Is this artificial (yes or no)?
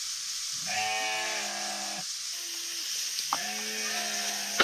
no